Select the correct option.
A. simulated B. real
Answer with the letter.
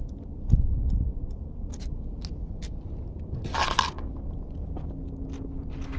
B